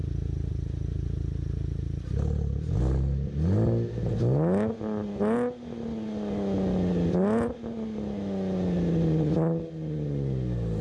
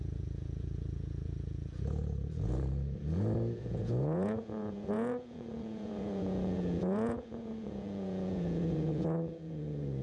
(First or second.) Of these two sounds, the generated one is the second